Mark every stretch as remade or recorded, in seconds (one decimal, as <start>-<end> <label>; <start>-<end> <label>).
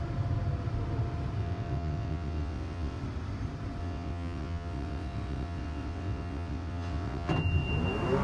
0.0-1.4 recorded; 1.4-3.0 remade; 3.0-3.8 recorded; 3.8-7.3 remade; 7.3-8.2 recorded